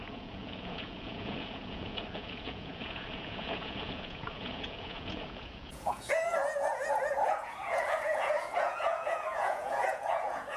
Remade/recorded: remade